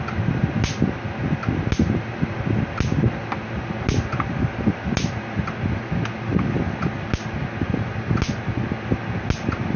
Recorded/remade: recorded